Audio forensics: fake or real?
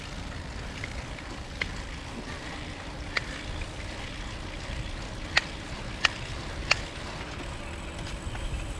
real